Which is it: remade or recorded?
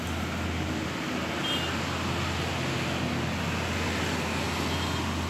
recorded